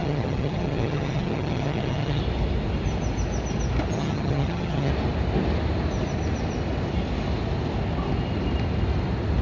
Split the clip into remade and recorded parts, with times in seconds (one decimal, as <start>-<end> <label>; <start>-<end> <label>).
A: 0.0-2.2 remade; 2.2-3.9 recorded; 3.9-4.9 remade; 4.9-9.4 recorded